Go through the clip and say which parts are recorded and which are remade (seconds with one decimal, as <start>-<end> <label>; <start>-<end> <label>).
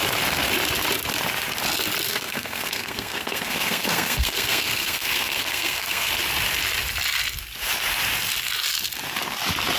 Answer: 0.0-2.1 recorded; 2.1-6.1 remade; 6.1-9.8 recorded